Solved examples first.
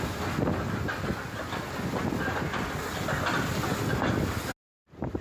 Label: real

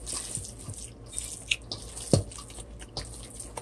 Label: real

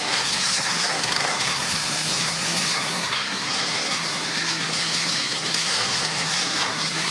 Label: fake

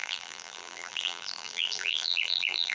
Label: fake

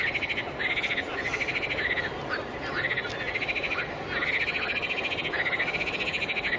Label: real